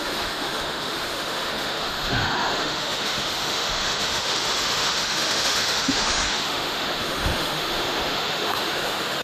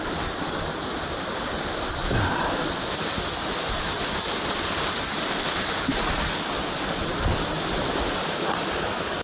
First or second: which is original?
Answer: second